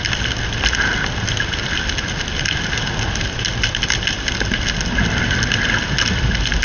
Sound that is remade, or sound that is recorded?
recorded